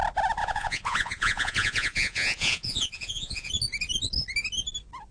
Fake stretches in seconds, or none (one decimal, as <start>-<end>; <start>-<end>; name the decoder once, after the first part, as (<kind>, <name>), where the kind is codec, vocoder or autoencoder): 0.4-3.5 (vocoder, Vocos)